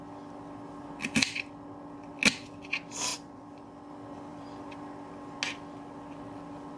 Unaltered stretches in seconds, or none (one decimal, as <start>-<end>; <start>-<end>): 0.0-3.1; 3.9-4.3; 5.1-6.8